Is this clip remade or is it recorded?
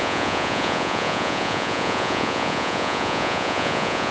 remade